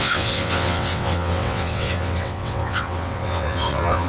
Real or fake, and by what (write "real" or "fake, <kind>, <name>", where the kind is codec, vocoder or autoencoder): fake, vocoder, WaveNeXt